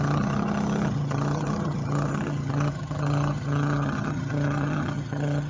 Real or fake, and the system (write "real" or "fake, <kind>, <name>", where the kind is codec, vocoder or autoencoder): fake, vocoder, HiFi-GAN